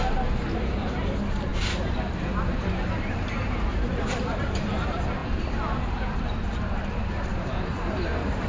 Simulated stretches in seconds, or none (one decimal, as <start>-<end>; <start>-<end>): 0.0-8.5

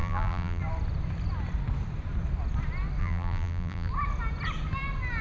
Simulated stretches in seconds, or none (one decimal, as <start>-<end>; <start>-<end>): 0.0-0.6; 3.0-3.9

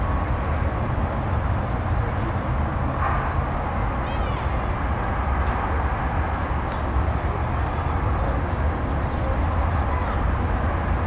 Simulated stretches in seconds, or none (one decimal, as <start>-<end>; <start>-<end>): none